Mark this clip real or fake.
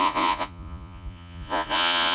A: fake